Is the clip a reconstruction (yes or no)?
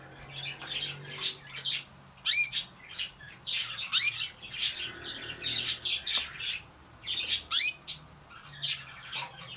no